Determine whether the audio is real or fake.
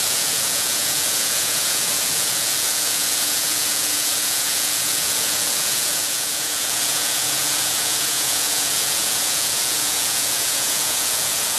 fake